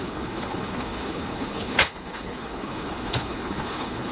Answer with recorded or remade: remade